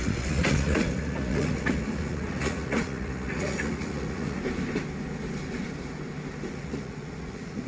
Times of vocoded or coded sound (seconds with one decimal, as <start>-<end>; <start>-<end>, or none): 0.0-4.4; 6.5-7.7